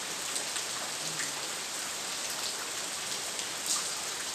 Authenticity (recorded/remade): recorded